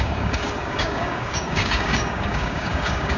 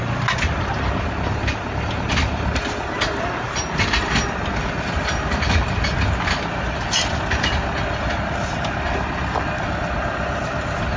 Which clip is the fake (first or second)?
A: first